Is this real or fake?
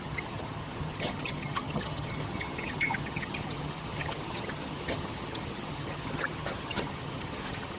fake